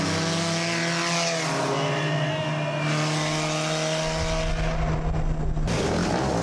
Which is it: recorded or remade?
recorded